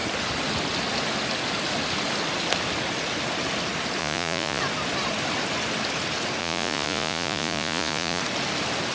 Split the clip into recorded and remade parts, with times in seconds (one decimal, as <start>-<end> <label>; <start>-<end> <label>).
0.0-4.0 recorded; 4.0-4.6 remade; 4.6-6.4 recorded; 6.4-8.2 remade; 8.2-8.9 recorded